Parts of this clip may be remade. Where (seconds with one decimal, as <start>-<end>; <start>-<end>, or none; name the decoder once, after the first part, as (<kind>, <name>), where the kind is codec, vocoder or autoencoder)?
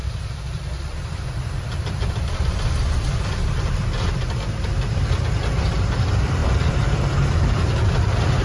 0.0-8.4 (vocoder, BigVGAN v2)